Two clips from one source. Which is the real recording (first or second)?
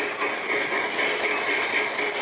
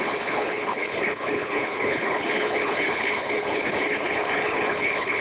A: first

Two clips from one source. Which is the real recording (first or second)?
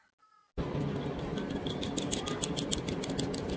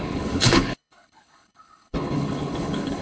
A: first